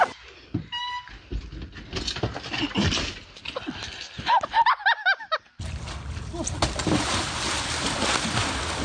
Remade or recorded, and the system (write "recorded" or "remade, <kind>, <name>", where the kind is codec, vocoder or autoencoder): recorded